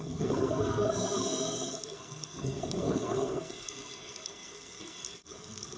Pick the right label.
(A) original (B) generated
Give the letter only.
B